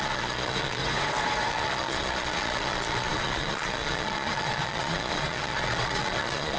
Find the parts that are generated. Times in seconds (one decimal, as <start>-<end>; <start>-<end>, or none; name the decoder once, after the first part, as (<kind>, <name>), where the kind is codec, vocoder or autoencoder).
0.0-0.8 (vocoder, Vocos); 1.5-6.6